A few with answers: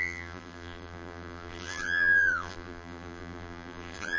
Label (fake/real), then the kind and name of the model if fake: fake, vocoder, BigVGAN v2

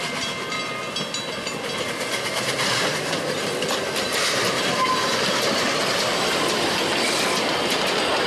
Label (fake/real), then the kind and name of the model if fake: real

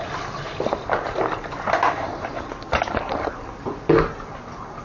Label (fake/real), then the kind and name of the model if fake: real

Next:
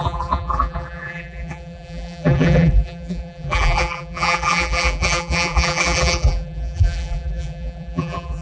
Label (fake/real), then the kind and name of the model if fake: fake, vocoder, BigVGAN v2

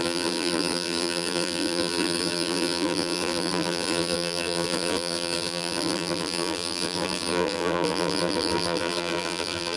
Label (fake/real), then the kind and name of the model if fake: fake, vocoder, BigVGAN v2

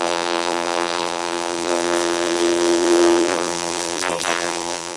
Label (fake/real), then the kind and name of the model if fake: fake, vocoder, BigVGAN v2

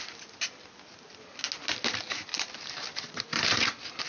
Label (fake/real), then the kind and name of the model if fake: real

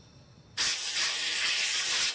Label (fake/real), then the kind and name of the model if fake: real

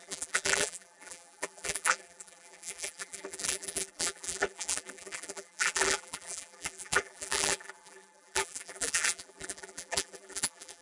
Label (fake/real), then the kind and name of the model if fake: fake, vocoder, BigVGAN v2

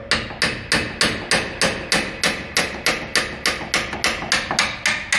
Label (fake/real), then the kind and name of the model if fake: real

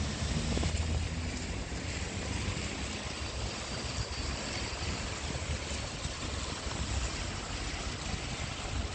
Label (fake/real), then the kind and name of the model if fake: real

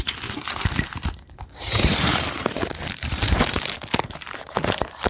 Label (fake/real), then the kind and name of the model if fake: fake, vocoder, BigVGAN v2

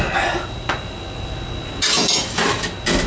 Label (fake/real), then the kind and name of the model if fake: real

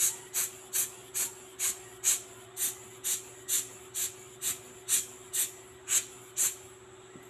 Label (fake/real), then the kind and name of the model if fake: real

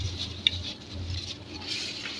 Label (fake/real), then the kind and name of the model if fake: fake, vocoder, BigVGAN v2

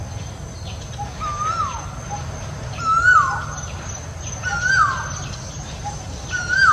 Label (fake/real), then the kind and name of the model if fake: real